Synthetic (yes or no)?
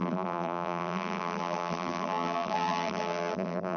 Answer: yes